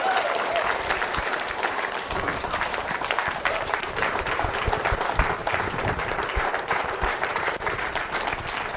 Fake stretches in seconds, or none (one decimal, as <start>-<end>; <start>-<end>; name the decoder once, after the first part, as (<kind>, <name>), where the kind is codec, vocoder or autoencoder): 2.3-4.7 (vocoder, BigVGAN v2); 5.4-7.9